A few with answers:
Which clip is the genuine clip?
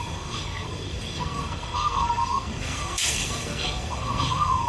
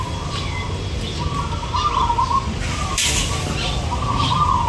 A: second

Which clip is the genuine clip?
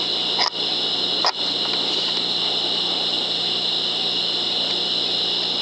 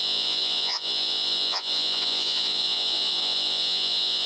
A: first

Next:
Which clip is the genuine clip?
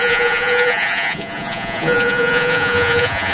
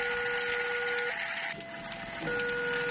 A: second